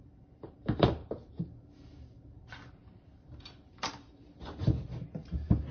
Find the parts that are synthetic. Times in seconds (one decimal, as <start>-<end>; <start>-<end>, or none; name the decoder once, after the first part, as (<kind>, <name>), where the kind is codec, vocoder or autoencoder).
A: 0.0-5.7 (vocoder, BigVGAN v2)